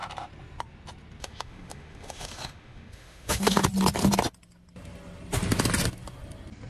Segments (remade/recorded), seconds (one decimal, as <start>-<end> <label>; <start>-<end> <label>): 0.0-1.2 recorded; 1.2-3.6 remade; 3.6-6.7 recorded